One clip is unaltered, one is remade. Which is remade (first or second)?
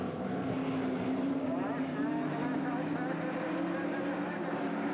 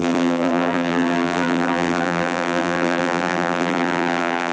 second